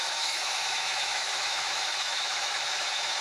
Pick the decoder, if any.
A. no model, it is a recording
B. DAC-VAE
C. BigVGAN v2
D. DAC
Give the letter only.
B